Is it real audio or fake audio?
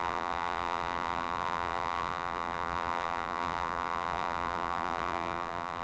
fake